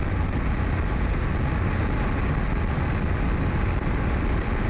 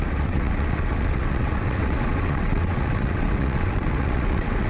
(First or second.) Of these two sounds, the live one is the first